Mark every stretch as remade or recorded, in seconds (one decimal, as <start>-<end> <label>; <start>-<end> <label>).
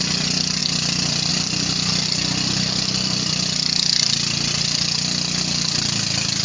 0.0-6.4 recorded